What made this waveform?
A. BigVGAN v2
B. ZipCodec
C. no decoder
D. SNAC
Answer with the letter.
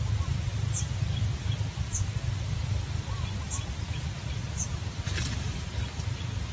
C